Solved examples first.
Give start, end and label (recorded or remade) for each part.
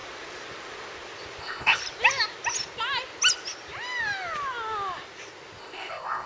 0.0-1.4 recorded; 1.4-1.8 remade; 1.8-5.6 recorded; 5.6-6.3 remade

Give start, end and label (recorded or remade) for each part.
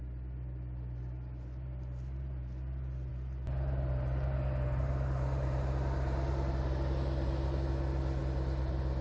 0.0-9.0 recorded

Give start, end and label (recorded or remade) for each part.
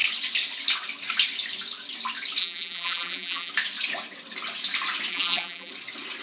0.0-2.4 recorded; 2.4-3.5 remade; 3.5-5.1 recorded; 5.1-5.7 remade; 5.7-6.2 recorded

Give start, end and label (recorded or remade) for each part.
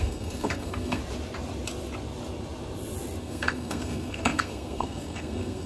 0.0-1.0 remade; 1.0-3.2 recorded; 3.2-5.7 remade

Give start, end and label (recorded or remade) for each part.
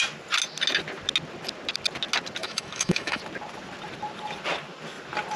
0.0-2.4 recorded; 2.4-3.2 remade; 3.2-5.4 recorded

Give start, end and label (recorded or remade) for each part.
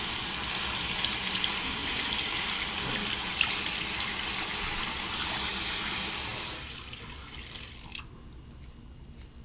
0.0-9.4 recorded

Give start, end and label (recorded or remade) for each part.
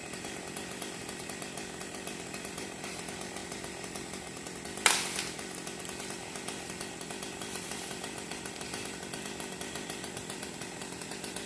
0.0-11.5 recorded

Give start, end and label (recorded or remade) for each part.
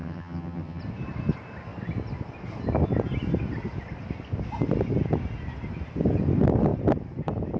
0.0-0.8 remade; 0.8-7.6 recorded